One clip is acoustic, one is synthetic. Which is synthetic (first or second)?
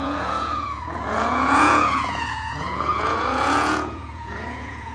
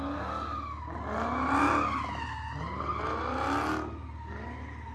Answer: first